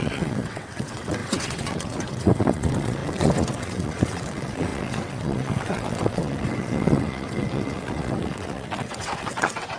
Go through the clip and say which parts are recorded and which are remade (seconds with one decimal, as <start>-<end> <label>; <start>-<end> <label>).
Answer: 0.0-9.8 remade